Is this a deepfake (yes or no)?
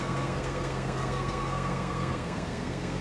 yes